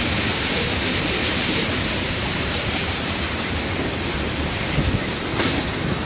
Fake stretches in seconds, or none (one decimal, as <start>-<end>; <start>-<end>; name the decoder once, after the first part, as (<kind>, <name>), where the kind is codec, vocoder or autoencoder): 1.2-3.6 (vocoder, BigVGAN v2)